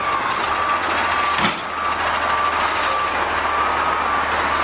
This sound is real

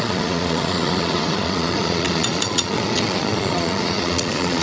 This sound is fake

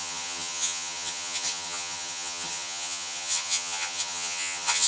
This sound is fake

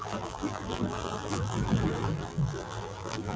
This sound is fake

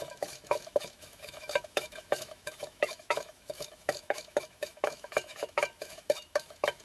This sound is fake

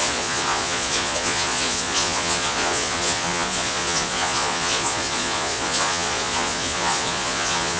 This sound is fake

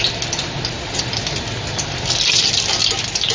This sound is real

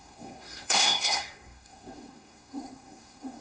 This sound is fake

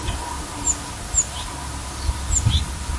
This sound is real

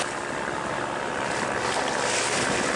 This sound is fake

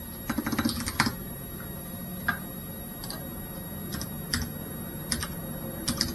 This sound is real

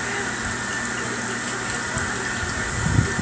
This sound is real